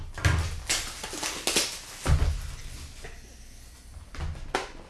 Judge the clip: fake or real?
real